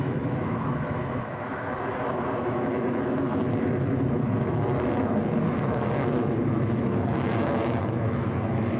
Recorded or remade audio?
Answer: remade